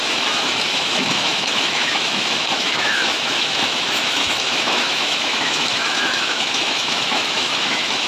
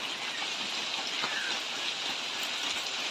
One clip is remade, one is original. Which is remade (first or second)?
first